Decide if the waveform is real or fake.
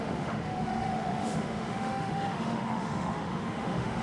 fake